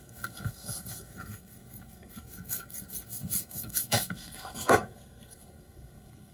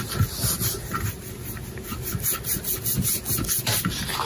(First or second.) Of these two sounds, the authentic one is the second